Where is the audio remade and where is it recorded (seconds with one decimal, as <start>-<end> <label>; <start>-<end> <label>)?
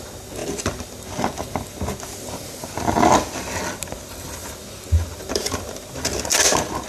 0.0-6.9 recorded